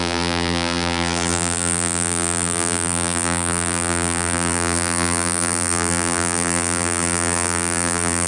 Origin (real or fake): fake